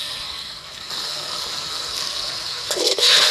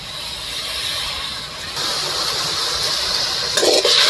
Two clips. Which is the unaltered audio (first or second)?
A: second